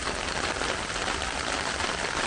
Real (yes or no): yes